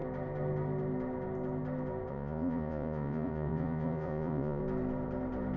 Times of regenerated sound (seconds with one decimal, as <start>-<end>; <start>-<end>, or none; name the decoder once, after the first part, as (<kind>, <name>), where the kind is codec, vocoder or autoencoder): 2.1-4.6 (vocoder, Vocos)